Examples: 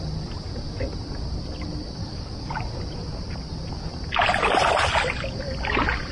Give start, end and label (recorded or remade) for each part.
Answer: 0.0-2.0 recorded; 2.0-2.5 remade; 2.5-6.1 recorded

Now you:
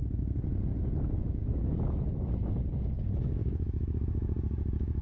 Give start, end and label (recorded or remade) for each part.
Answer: 0.0-1.4 recorded; 1.4-2.5 remade; 2.5-3.4 recorded; 3.4-5.0 remade